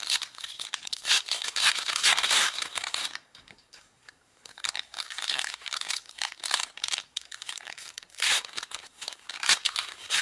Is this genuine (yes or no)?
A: no